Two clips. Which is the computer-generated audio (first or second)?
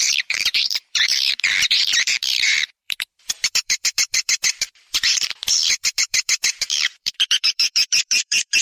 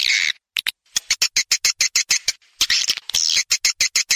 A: first